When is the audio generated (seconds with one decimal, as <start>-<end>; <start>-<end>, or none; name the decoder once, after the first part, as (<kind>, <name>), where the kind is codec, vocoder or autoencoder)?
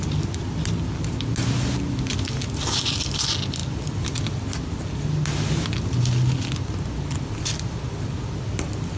none